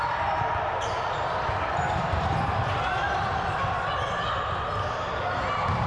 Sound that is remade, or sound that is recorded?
recorded